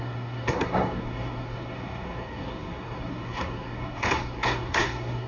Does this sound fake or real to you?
fake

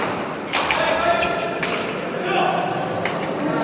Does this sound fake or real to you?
real